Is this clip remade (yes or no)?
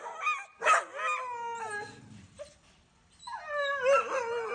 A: no